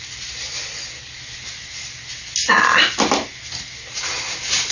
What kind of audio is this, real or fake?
real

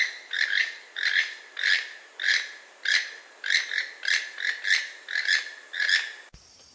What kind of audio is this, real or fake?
real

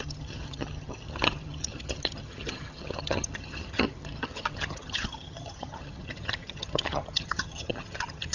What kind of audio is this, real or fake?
fake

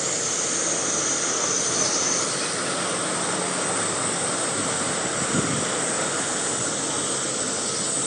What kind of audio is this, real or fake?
real